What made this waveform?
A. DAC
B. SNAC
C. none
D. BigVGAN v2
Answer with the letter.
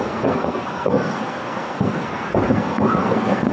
B